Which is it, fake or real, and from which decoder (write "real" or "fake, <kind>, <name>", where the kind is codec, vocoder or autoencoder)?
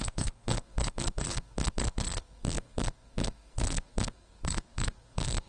fake, codec, SNAC